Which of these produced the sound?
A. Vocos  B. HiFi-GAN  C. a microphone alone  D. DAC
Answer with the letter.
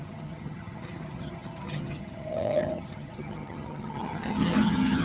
B